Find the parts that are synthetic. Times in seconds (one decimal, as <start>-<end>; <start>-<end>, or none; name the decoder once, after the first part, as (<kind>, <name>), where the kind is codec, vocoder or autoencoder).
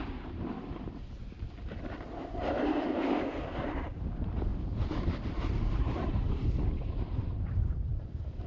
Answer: 0.0-1.2 (vocoder, BigVGAN v2); 2.2-4.5; 5.3-8.5